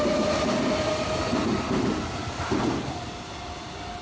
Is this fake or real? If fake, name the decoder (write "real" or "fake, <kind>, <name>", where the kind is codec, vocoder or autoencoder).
real